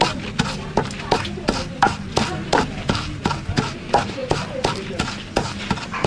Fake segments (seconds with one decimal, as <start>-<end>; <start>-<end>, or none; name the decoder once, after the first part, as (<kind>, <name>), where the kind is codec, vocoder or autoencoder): none